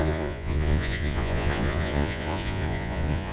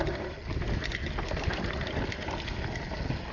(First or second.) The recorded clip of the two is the second